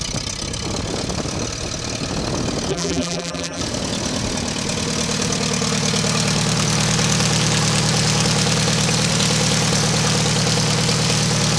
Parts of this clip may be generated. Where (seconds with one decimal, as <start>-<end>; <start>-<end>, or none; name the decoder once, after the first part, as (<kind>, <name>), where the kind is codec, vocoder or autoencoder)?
2.7-3.6 (vocoder, BigVGAN v2)